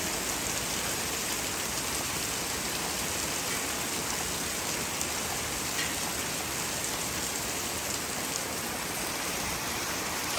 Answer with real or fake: real